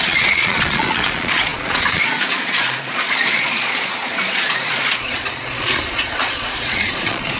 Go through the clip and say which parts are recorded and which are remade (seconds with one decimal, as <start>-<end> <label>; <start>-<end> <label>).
0.0-7.4 remade